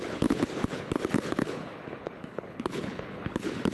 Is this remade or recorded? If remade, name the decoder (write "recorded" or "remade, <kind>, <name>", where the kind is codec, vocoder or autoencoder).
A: remade, codec, HILCodec